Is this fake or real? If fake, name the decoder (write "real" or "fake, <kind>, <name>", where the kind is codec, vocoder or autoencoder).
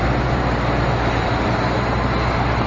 real